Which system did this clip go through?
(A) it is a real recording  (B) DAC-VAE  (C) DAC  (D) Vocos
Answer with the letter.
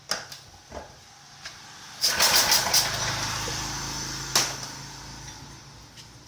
A